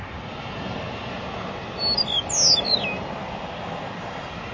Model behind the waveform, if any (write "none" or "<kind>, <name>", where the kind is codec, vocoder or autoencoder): none